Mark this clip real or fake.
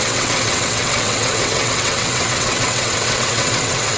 fake